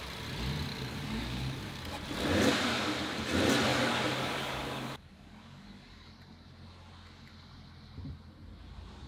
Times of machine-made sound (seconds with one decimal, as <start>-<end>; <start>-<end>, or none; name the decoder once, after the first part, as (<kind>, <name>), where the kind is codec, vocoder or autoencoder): 0.7-1.8 (codec, DAC); 3.7-6.2